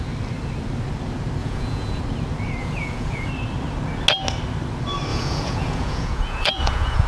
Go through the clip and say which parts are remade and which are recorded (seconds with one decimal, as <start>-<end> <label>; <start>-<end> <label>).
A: 0.0-1.4 recorded; 1.4-2.0 remade; 2.0-2.6 recorded; 2.6-3.3 remade; 3.3-5.1 recorded; 5.1-7.1 remade